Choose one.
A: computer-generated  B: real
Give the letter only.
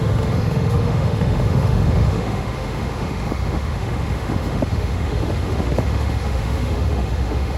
A